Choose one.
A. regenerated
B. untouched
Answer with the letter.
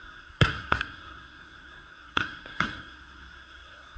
A